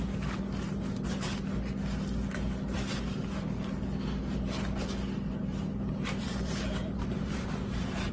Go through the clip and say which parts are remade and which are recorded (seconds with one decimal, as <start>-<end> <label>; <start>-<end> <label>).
0.0-5.5 recorded; 5.5-8.1 remade